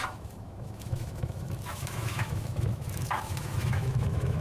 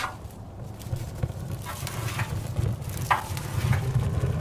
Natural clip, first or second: second